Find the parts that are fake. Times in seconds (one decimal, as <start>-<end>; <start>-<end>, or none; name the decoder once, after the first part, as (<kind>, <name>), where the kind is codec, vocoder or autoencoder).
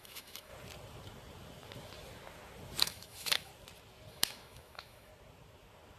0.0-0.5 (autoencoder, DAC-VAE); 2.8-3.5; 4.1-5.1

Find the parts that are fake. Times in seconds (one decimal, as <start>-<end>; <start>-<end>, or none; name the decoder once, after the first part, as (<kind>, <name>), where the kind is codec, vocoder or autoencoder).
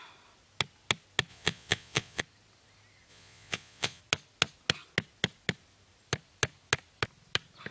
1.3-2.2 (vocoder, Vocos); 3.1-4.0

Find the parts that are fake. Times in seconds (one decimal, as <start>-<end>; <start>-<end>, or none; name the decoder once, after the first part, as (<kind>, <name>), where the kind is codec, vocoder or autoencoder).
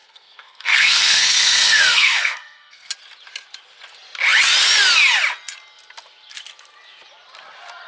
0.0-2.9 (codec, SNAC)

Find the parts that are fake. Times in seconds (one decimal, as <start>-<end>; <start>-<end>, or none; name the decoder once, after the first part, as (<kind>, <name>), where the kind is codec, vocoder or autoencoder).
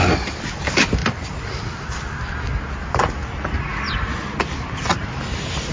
none